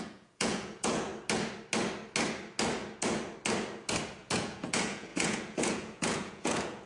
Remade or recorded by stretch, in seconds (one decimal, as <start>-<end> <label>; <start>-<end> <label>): 0.0-1.1 remade; 1.1-4.2 recorded; 4.2-6.9 remade